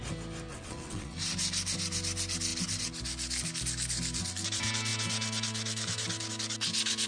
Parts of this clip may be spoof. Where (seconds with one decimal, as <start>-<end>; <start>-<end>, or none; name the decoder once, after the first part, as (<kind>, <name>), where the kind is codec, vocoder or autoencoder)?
0.5-1.2 (vocoder, WaveNeXt)